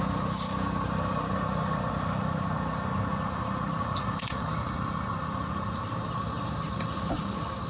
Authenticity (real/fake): real